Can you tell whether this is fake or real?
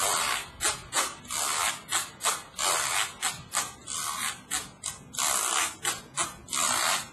real